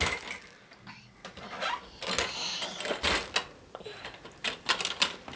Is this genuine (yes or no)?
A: yes